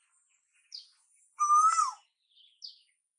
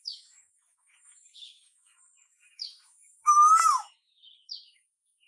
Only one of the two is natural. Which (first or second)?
first